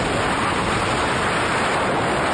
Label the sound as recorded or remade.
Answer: recorded